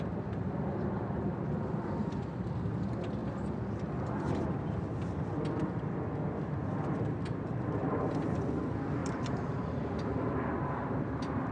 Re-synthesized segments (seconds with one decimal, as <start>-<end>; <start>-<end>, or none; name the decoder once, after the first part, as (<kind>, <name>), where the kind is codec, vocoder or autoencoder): 0.0-3.2 (vocoder, BigVGAN v2); 6.9-11.5